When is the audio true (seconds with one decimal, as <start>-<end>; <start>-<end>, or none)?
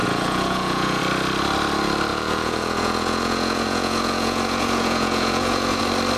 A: 1.0-2.1; 5.8-6.2